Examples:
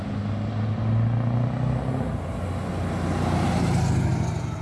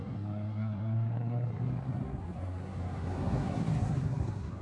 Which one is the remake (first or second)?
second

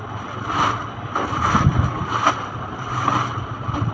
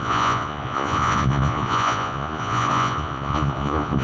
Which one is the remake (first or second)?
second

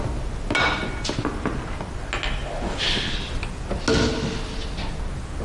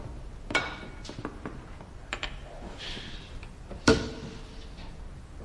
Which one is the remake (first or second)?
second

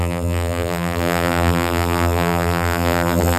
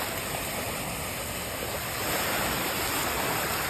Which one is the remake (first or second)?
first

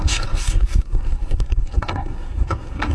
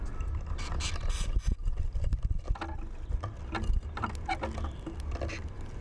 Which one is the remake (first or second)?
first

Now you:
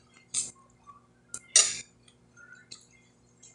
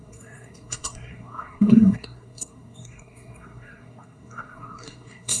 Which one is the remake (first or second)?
second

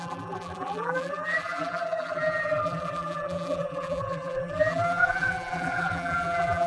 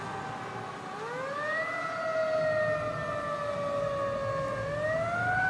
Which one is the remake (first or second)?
first